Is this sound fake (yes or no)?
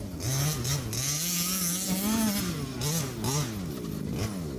no